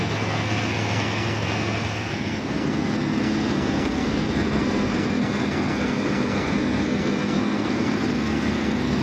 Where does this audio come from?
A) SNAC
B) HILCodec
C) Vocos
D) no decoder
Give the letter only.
A